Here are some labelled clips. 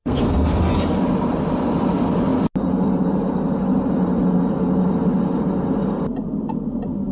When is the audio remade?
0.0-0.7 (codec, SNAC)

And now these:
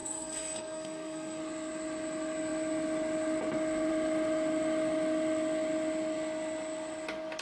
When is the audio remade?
0.0-1.4 (codec, SNAC)

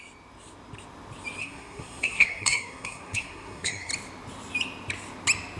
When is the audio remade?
1.4-3.9 (codec, SNAC)

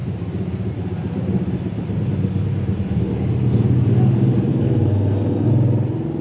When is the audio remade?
4.5-5.5 (codec, SNAC)

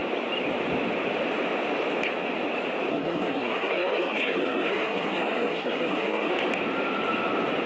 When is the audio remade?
2.9-6.3 (codec, SNAC)

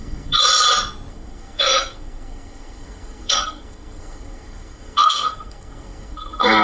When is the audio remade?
0.0-0.4 (codec, SNAC); 1.1-6.6

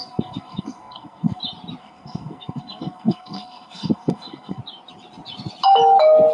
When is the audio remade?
0.0-1.4 (codec, SNAC); 1.8-4.6